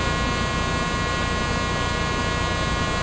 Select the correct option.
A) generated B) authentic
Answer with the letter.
B